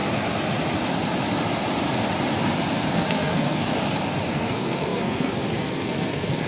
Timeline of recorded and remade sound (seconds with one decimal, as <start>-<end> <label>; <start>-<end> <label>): 0.0-2.9 recorded; 2.9-3.7 remade; 3.7-4.3 recorded; 4.3-6.5 remade